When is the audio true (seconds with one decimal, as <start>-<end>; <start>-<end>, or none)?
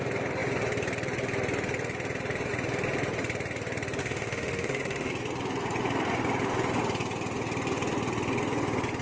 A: 0.0-4.0; 5.1-9.0